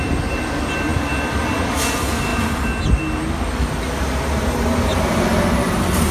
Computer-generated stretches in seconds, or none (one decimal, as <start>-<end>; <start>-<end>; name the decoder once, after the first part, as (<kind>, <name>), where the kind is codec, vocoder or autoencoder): none